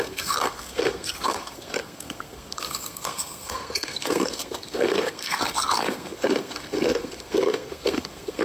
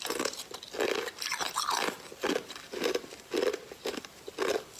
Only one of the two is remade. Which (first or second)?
first